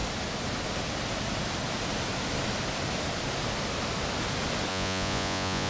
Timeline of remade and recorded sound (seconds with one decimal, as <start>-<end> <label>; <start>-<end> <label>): 0.0-4.7 recorded; 4.7-5.7 remade